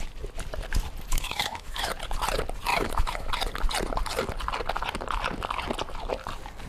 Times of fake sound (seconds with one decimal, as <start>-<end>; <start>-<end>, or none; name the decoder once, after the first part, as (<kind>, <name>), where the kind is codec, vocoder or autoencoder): 1.1-1.9 (autoencoder, DAC-VAE); 2.7-3.3